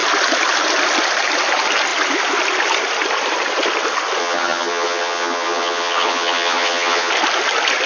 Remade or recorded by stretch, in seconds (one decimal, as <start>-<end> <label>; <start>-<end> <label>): 0.0-4.2 recorded; 4.2-7.1 remade; 7.1-7.9 recorded

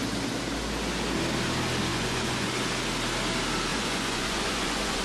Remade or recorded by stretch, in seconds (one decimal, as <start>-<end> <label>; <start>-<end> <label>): 0.0-1.9 recorded; 1.9-2.5 remade; 2.5-3.7 recorded; 3.7-5.0 remade